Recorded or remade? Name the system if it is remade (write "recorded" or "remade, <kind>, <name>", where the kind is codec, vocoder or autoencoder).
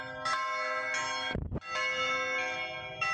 recorded